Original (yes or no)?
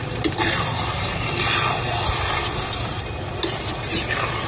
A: yes